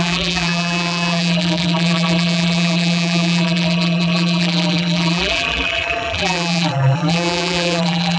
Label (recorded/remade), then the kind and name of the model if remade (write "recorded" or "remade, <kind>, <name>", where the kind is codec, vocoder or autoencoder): remade, vocoder, BigVGAN v2